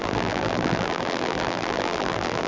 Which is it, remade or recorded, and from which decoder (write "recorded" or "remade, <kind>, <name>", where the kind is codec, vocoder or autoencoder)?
remade, vocoder, BigVGAN v2